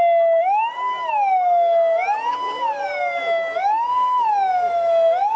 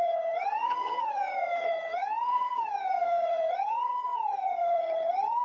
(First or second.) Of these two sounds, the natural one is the first